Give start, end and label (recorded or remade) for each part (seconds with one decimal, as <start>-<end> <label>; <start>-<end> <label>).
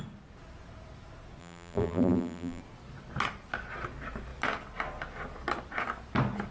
0.0-1.4 recorded; 1.4-2.6 remade; 2.6-6.5 recorded